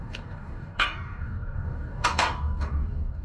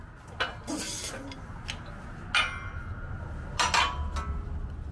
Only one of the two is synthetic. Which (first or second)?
first